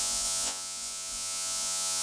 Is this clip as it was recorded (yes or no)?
no